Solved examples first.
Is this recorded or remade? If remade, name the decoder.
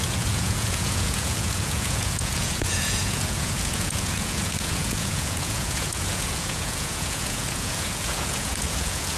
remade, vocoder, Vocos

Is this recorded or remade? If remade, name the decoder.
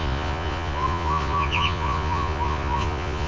remade, vocoder, Vocos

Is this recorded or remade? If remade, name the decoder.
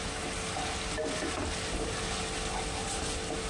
recorded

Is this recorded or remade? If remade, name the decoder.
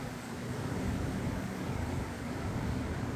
remade, codec, DAC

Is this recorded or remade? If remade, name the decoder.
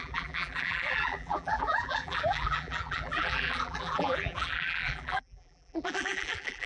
remade, vocoder, BigVGAN v2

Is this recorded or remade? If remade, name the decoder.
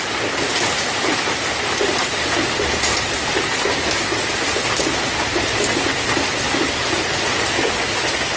recorded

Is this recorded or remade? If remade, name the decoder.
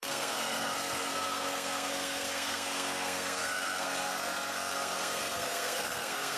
remade, codec, SNAC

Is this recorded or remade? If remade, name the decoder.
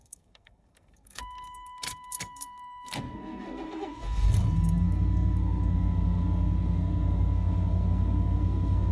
remade, codec, SNAC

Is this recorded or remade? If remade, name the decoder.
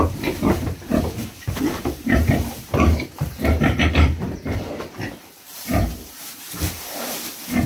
remade, vocoder, BigVGAN v2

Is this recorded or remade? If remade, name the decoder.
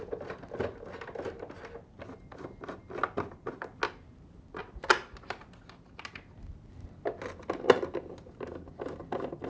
recorded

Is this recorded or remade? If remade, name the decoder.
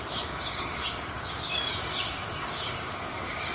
remade, codec, DAC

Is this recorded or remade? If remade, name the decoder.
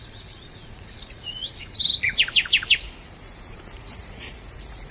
remade, vocoder, Vocos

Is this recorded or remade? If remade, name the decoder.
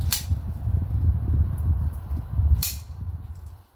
remade, vocoder, BigVGAN v2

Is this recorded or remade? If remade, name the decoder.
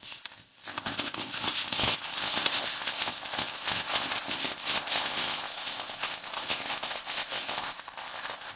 remade, codec, ZipCodec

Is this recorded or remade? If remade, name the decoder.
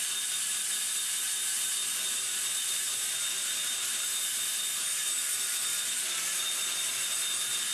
recorded